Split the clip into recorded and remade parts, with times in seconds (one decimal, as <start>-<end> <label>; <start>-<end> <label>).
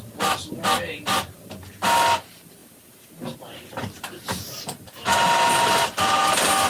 0.0-2.6 recorded; 2.6-6.7 remade